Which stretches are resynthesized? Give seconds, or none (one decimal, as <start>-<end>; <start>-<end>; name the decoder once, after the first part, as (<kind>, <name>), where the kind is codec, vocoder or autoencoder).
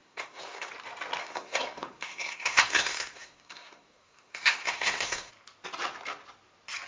0.0-0.7 (codec, SNAC); 1.2-5.3